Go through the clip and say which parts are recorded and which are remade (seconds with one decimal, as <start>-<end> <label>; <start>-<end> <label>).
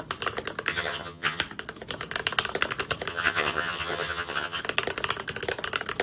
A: 0.0-0.7 recorded; 0.7-1.4 remade; 1.4-3.1 recorded; 3.1-4.6 remade; 4.6-6.0 recorded